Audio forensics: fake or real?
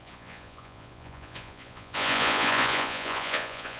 fake